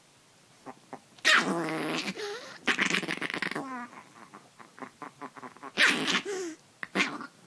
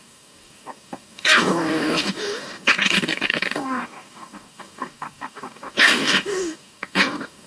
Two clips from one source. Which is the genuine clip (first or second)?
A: first